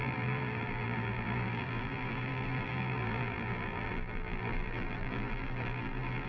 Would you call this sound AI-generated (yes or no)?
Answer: yes